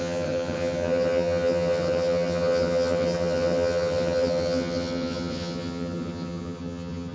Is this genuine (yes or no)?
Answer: no